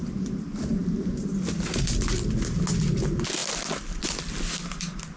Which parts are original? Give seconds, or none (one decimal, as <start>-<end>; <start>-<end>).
0.0-5.2